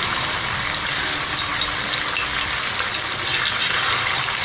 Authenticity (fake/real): real